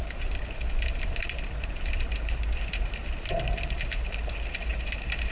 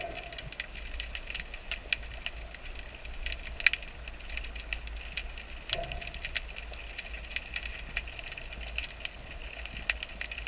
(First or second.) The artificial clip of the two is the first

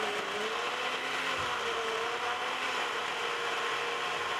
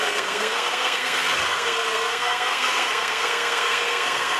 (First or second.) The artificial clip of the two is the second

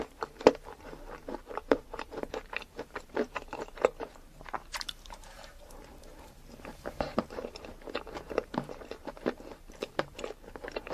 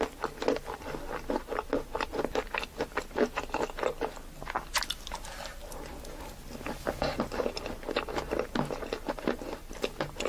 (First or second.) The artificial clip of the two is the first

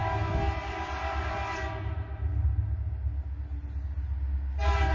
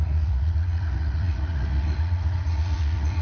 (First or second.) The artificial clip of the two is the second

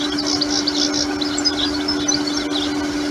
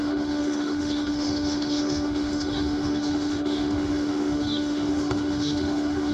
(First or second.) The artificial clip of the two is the second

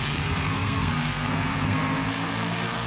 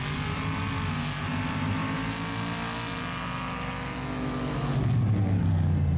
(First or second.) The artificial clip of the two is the first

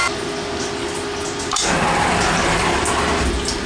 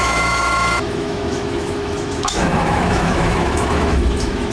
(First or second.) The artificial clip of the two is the second